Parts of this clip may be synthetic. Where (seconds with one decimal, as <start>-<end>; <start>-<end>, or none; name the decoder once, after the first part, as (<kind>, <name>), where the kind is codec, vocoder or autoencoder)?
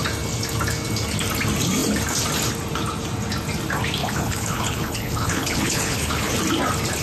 4.0-6.3 (codec, HILCodec)